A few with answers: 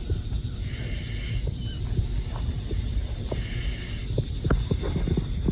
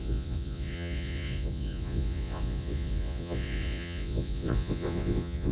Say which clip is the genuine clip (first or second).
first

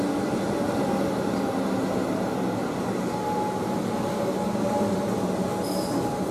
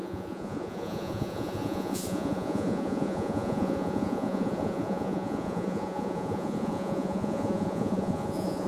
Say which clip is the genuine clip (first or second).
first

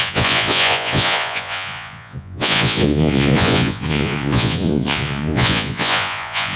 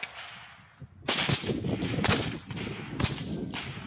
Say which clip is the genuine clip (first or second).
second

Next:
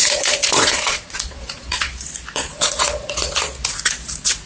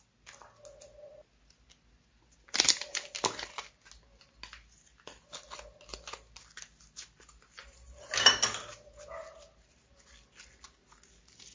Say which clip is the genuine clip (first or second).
second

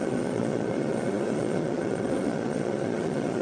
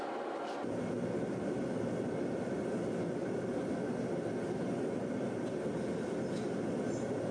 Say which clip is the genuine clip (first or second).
second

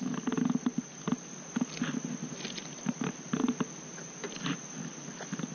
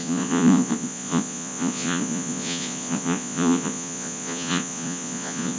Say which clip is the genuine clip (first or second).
first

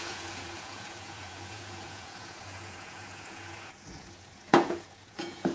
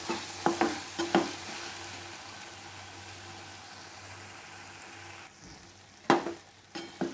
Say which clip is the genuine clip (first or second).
second